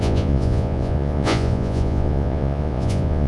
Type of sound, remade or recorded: remade